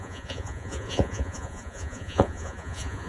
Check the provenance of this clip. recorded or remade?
remade